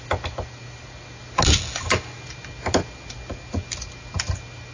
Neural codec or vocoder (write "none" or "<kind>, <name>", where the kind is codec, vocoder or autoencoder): none